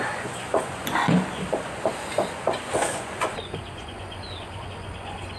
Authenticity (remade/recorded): remade